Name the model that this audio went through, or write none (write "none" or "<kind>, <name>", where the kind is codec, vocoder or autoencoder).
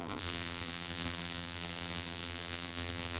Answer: vocoder, BigVGAN v2